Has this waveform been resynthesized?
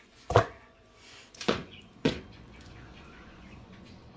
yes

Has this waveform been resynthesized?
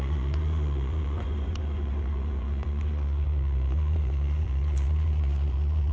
yes